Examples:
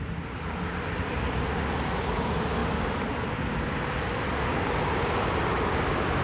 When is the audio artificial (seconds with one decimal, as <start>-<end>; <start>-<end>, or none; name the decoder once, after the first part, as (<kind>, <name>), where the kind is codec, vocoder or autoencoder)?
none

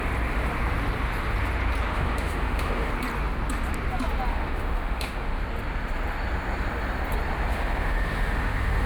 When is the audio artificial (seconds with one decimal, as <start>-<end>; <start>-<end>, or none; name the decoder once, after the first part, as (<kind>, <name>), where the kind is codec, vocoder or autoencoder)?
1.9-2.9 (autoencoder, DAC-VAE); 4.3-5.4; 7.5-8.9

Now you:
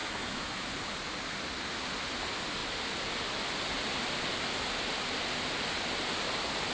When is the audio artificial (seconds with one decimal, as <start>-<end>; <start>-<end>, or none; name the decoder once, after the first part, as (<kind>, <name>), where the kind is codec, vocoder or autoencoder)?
0.0-0.7 (autoencoder, DAC-VAE)